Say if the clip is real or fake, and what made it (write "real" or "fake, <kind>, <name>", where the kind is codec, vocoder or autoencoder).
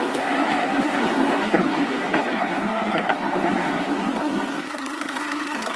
fake, codec, SNAC